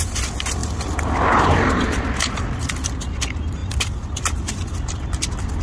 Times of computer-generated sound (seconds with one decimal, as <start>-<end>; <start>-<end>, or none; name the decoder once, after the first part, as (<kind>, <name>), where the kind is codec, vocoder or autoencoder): 3.6-5.6 (vocoder, BigVGAN v2)